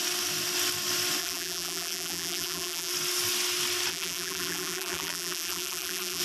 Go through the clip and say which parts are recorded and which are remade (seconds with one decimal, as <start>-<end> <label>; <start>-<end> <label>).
0.0-1.2 recorded; 1.2-2.9 remade; 2.9-3.9 recorded; 3.9-6.2 remade